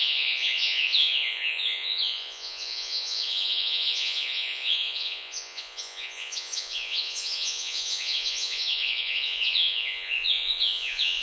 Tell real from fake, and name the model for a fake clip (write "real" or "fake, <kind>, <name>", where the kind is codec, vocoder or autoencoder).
fake, vocoder, Vocos